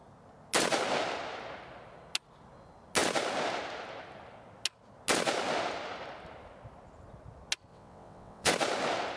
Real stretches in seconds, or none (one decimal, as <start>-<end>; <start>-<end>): 0.0-7.7; 8.5-9.2